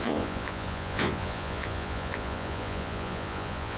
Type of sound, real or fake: fake